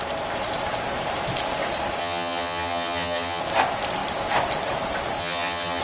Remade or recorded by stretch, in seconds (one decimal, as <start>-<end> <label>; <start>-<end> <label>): 0.0-2.0 recorded; 2.0-3.4 remade; 3.4-5.2 recorded; 5.2-5.8 remade